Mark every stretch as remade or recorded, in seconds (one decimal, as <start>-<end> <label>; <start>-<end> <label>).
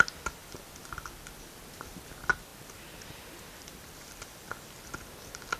0.0-5.6 recorded